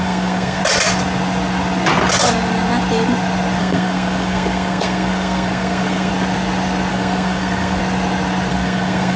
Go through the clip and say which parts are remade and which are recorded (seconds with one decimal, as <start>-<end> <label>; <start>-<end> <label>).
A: 0.0-0.6 remade; 0.6-3.6 recorded; 3.6-6.1 remade; 6.1-6.9 recorded; 6.9-7.8 remade; 7.8-8.5 recorded; 8.5-9.2 remade